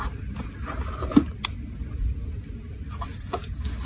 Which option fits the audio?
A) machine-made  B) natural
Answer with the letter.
B